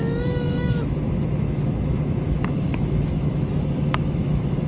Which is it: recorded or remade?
remade